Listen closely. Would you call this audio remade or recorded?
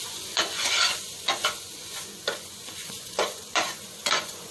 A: remade